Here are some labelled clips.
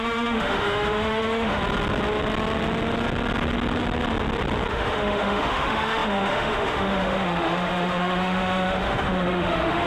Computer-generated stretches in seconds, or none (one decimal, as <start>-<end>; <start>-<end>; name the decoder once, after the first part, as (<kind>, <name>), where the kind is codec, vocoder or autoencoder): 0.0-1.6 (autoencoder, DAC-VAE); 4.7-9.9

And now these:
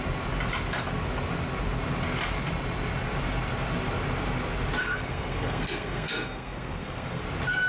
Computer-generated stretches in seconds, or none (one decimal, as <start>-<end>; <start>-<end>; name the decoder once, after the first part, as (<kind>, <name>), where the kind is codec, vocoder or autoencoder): 4.8-7.2 (codec, SNAC)

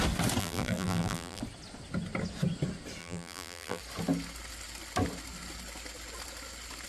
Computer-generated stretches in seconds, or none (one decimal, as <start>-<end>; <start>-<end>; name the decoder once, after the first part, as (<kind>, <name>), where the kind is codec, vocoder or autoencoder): 0.4-1.4 (vocoder, BigVGAN v2); 3.0-3.8

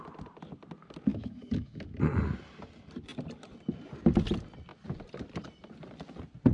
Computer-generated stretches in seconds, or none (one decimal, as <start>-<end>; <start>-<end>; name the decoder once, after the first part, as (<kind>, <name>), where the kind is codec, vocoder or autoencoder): 1.1-1.9 (autoencoder, DAC-VAE)

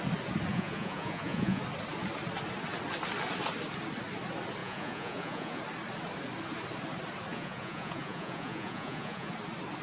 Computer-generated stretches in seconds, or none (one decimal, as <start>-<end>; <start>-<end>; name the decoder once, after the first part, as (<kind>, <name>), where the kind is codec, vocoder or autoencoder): 0.5-1.6 (vocoder, Vocos); 4.6-5.6; 7.3-9.3

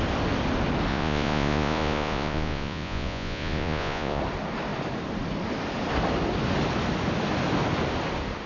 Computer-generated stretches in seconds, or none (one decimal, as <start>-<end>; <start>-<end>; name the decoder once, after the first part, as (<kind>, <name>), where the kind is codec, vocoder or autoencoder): 0.9-4.2 (vocoder, Vocos)

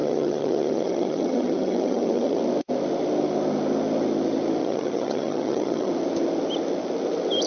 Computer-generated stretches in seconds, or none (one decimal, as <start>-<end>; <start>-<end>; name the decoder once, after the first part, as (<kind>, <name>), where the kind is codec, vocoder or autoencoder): 0.0-2.4 (vocoder, HiFi-GAN); 4.6-5.9